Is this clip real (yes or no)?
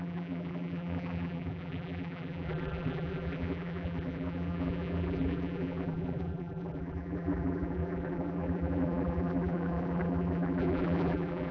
no